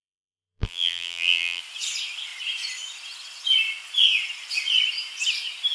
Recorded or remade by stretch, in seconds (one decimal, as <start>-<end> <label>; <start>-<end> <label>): 0.0-1.6 remade; 1.6-5.7 recorded